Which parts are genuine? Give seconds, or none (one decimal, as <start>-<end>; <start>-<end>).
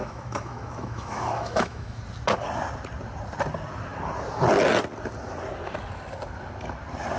2.0-7.2